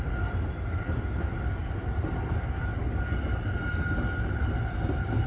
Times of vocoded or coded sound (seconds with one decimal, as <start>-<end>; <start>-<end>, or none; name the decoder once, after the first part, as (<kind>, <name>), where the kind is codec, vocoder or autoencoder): none